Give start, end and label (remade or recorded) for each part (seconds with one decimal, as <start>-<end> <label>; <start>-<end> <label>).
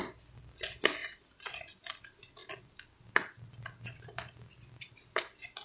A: 0.0-5.6 recorded